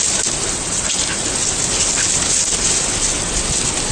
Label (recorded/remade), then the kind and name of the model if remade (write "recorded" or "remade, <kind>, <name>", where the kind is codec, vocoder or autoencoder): recorded